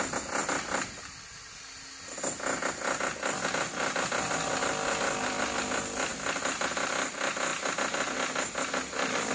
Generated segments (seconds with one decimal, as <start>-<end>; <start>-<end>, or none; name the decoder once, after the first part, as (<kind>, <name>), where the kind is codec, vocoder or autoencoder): 0.4-1.2 (vocoder, BigVGAN v2); 6.1-6.9